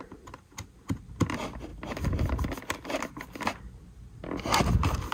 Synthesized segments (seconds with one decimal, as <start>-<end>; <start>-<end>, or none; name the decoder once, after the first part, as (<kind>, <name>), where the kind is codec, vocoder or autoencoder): none